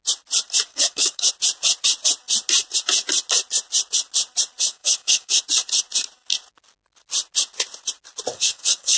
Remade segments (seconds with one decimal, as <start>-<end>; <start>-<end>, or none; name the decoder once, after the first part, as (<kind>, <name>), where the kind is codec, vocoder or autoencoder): 0.7-1.3 (codec, DAC); 4.7-5.4; 8.3-9.0